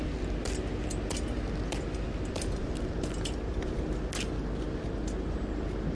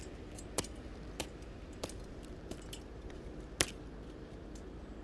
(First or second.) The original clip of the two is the first